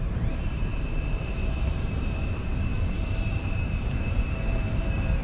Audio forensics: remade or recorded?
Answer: remade